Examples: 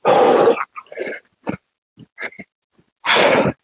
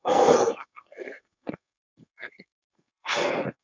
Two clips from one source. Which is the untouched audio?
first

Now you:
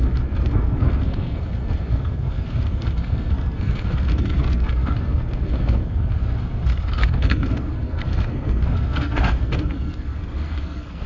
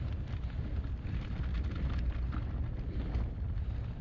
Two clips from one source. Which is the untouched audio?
second